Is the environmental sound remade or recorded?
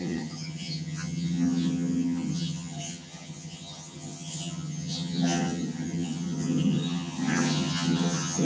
remade